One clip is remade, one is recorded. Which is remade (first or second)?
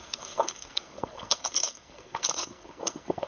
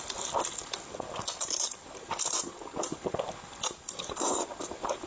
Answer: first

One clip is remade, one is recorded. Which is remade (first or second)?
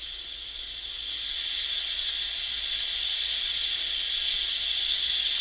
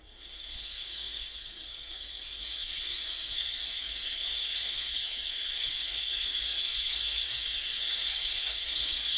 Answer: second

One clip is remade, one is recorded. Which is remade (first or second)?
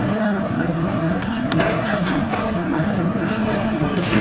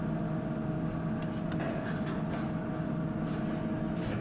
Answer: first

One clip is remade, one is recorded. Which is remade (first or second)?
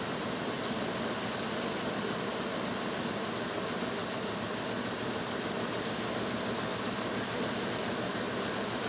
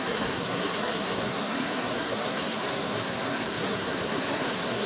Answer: second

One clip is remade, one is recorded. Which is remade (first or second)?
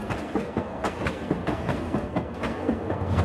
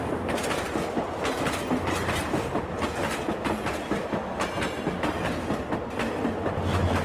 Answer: first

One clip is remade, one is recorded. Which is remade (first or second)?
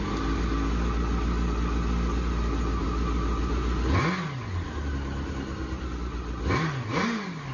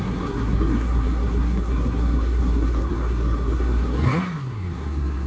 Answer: second